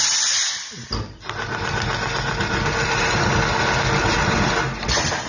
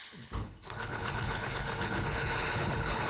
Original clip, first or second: first